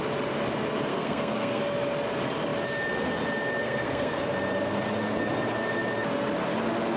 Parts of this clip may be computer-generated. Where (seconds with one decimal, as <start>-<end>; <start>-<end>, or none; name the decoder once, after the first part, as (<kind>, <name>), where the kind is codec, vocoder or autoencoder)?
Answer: 0.9-1.6 (codec, SNAC); 3.6-4.2